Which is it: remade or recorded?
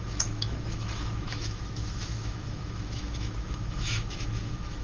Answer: remade